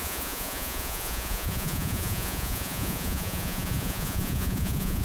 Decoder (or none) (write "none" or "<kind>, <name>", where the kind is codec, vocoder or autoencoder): vocoder, Vocos